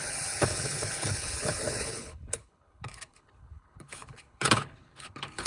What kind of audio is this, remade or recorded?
remade